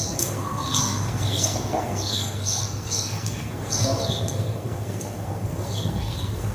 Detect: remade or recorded remade